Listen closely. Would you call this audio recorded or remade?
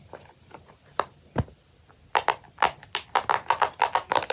recorded